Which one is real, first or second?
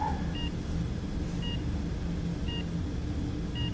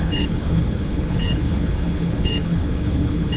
first